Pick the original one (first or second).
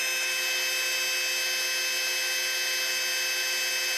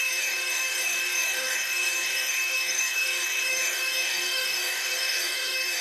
first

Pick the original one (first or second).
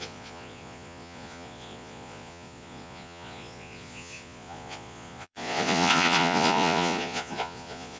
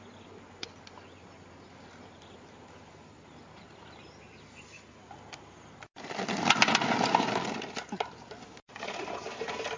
second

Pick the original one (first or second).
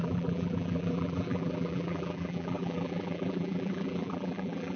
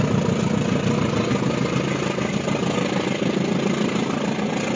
second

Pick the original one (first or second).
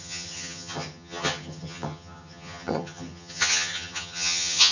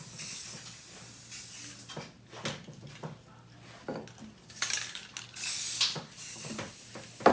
second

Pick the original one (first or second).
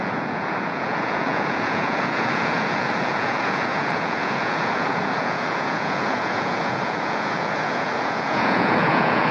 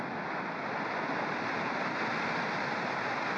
second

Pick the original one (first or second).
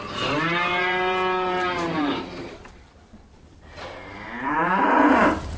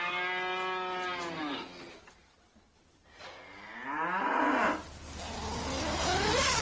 second